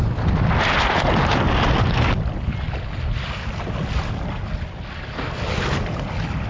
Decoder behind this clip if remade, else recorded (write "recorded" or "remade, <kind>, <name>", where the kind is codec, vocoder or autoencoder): recorded